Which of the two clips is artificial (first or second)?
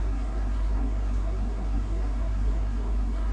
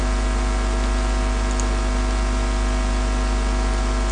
first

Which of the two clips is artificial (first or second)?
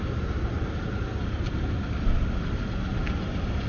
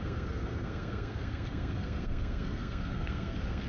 second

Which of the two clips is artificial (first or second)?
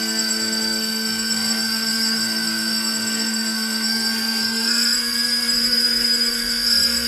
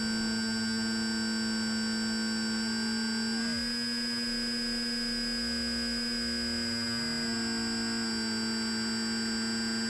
first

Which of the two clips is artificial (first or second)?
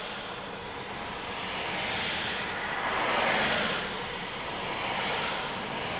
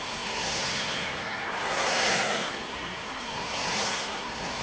second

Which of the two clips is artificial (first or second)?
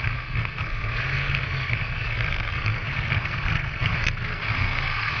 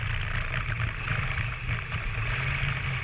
first